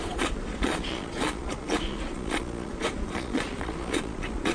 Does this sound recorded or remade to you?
remade